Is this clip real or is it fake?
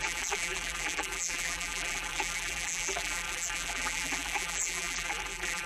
fake